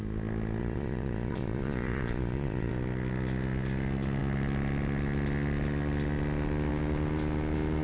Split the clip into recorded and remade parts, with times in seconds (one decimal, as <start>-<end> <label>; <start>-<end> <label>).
0.0-0.6 recorded; 0.6-2.7 remade; 2.7-7.8 recorded